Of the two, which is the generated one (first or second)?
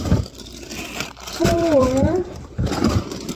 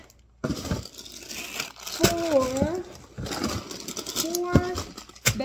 first